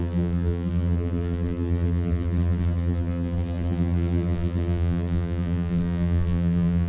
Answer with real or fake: fake